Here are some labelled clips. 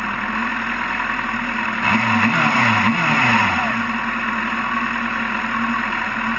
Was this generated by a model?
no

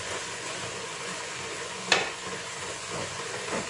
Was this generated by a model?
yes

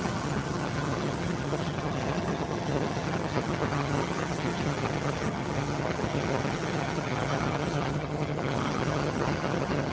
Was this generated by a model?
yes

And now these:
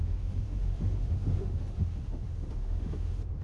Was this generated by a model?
yes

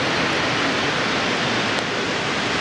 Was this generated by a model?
no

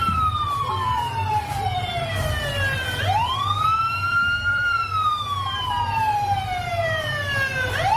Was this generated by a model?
yes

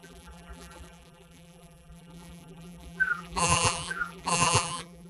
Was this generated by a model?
yes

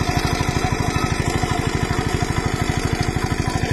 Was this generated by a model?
no